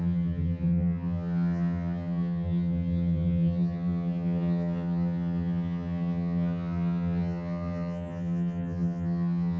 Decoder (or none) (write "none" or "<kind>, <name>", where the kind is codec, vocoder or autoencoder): vocoder, HiFi-GAN